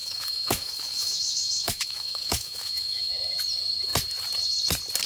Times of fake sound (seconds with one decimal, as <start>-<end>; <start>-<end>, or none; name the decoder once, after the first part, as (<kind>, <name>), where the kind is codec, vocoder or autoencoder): 0.0-3.1 (autoencoder, DAC-VAE)